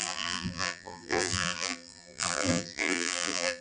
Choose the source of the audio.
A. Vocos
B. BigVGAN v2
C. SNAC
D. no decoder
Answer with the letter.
B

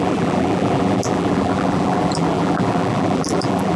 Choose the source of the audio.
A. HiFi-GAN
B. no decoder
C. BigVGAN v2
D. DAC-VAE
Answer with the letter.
C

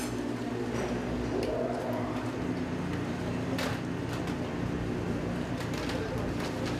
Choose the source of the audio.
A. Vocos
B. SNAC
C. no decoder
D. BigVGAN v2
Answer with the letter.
C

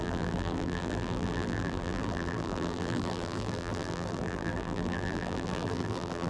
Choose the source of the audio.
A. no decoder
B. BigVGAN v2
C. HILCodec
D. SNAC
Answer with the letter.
B